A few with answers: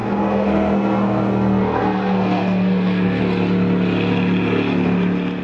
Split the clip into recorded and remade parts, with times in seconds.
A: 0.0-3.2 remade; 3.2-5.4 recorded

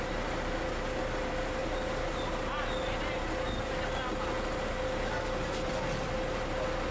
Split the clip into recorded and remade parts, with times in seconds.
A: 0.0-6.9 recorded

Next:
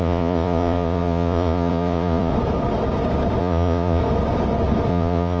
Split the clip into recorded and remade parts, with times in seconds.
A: 0.0-2.3 remade; 2.3-3.4 recorded; 3.4-4.0 remade; 4.0-4.9 recorded; 4.9-5.4 remade

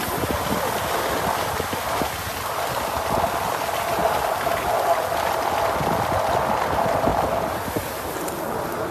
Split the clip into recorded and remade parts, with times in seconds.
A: 0.0-8.9 recorded

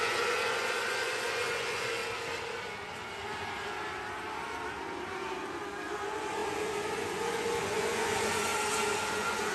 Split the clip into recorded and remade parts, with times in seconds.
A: 0.0-2.0 remade; 2.0-6.0 recorded; 6.0-8.5 remade; 8.5-9.1 recorded; 9.1-9.5 remade

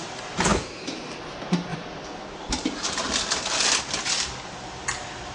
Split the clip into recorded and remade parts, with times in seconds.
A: 0.0-0.5 recorded; 0.5-1.1 remade; 1.1-1.7 recorded; 1.7-3.8 remade; 3.8-5.3 recorded